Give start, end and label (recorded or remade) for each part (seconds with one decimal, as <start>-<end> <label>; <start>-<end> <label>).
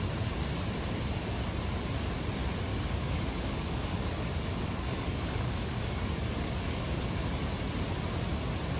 0.0-2.7 recorded; 2.7-7.0 remade; 7.0-8.8 recorded